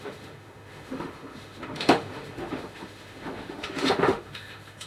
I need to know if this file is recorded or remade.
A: remade